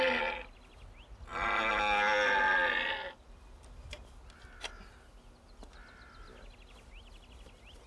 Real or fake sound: real